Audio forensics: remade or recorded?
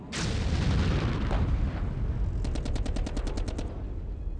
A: recorded